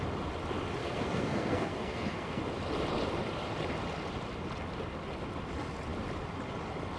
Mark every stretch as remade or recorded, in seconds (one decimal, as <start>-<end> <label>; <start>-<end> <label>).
0.0-0.8 recorded; 0.8-2.4 remade; 2.4-7.0 recorded